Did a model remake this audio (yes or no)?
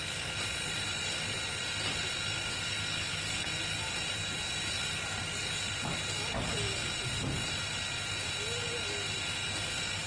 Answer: no